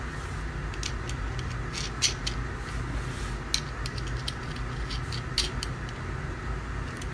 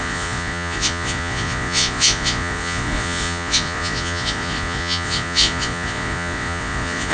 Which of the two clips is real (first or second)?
first